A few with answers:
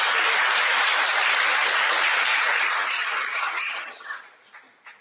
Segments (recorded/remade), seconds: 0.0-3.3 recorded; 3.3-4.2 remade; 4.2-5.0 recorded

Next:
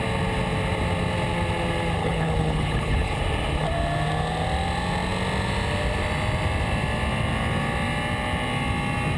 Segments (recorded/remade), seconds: 0.0-2.0 recorded; 2.0-3.2 remade; 3.2-9.2 recorded

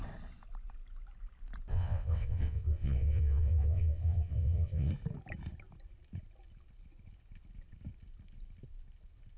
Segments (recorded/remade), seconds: 0.0-1.7 recorded; 1.7-4.9 remade; 4.9-9.4 recorded

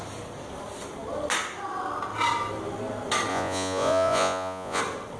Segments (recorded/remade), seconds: 0.0-3.3 recorded; 3.3-4.8 remade; 4.8-5.2 recorded